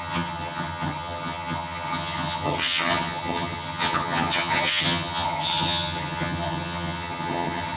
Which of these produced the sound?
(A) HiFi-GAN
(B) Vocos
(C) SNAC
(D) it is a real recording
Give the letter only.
A